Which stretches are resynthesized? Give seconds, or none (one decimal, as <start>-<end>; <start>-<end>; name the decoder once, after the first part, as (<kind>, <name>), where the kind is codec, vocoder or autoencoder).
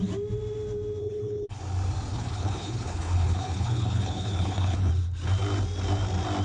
1.0-1.6 (codec, HILCodec); 2.1-4.9